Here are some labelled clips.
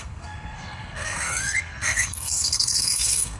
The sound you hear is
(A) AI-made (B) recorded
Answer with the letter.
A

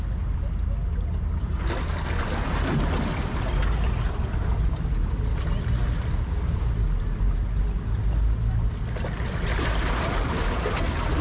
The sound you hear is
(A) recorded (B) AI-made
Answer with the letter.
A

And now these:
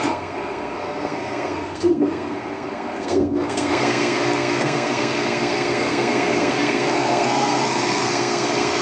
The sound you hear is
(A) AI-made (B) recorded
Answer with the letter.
A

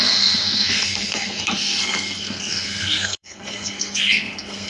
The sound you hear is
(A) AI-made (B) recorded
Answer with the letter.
A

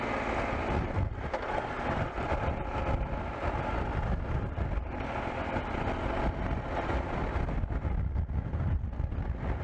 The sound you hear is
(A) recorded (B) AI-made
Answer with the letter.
A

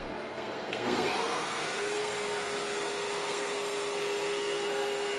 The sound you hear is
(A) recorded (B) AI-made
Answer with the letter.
B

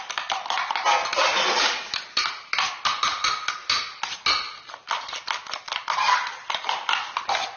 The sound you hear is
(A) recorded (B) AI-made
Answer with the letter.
A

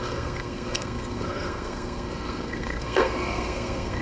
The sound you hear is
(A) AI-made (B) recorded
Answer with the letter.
A